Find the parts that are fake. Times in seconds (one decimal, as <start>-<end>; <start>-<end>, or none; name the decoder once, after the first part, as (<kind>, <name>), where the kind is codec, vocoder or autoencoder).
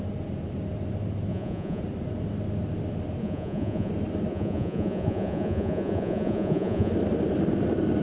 1.3-1.8 (vocoder, Vocos); 3.2-3.9; 4.3-6.9